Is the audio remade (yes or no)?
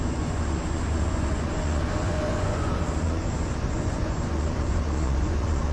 yes